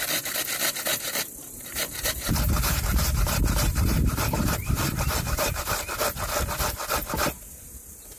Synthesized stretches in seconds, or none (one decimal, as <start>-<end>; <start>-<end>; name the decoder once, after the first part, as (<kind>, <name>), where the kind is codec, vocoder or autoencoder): 0.9-5.6 (vocoder, BigVGAN v2)